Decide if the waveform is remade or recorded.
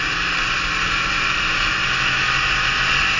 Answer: recorded